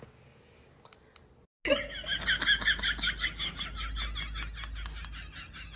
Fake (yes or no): no